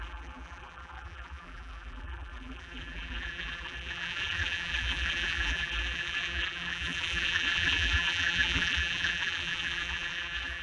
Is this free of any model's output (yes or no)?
no